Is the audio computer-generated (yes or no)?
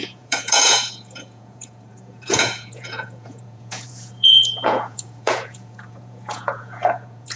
yes